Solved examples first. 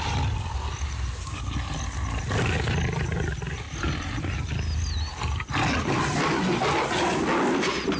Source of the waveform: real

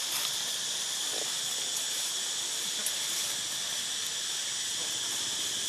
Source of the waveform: real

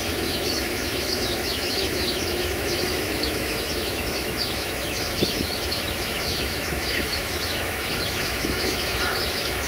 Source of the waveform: fake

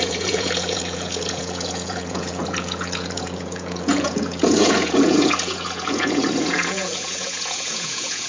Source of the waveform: fake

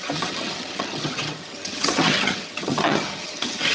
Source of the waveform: fake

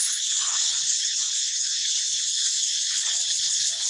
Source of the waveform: fake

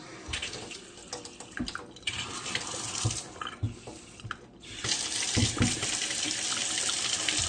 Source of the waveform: fake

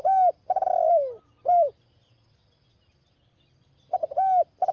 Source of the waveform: real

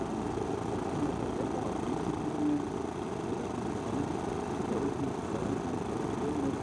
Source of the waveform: real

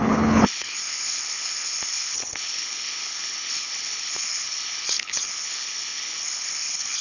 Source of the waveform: fake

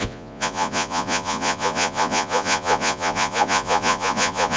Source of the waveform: fake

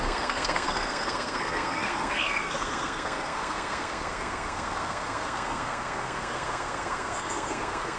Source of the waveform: fake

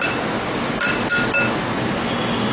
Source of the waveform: real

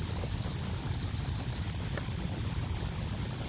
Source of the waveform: real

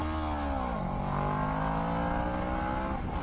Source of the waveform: real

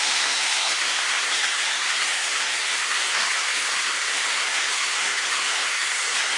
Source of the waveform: fake